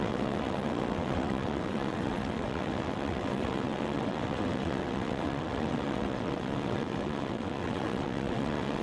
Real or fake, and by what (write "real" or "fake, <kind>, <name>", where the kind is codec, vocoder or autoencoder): fake, vocoder, WaveNeXt